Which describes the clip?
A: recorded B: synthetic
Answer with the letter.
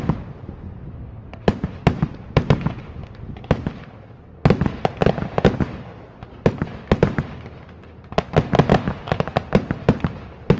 A